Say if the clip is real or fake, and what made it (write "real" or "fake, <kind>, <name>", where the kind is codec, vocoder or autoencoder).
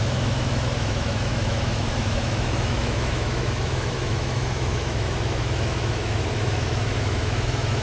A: fake, autoencoder, DAC-VAE